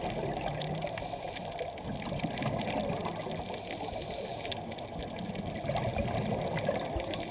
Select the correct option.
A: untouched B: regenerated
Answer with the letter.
A